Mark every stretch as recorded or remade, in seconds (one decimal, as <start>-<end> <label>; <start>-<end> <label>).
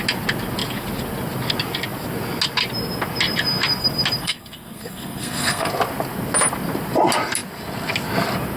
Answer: 0.0-4.2 recorded; 4.2-5.7 remade; 5.7-8.6 recorded